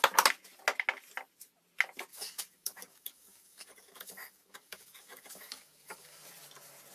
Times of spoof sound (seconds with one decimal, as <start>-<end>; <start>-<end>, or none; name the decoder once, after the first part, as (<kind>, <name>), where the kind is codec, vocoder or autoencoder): 2.1-6.2 (codec, DAC)